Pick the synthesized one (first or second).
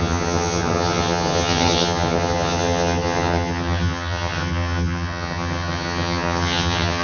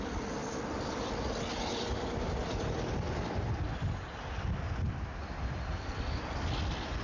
first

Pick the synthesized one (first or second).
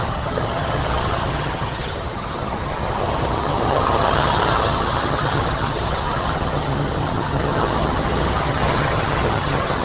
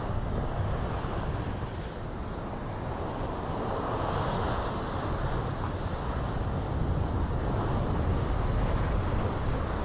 first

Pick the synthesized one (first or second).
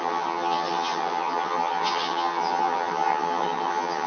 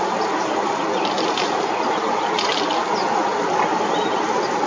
first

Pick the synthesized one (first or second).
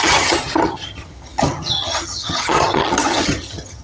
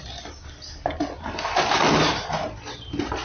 first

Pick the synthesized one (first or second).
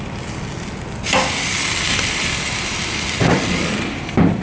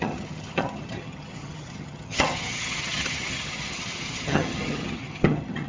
second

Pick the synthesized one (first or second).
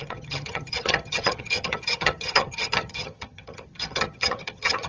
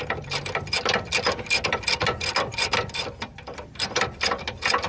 first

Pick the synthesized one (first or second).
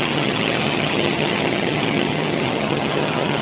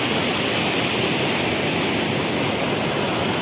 first